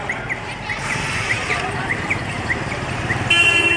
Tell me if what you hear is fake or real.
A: fake